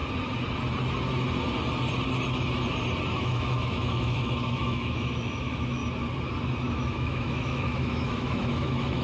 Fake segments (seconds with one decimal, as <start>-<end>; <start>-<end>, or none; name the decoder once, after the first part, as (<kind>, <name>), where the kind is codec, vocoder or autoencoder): 3.2-5.8 (autoencoder, DAC-VAE); 6.7-9.0